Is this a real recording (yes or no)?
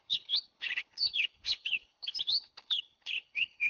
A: no